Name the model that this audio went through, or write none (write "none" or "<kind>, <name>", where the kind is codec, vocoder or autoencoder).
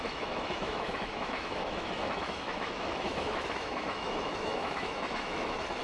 autoencoder, DAC-VAE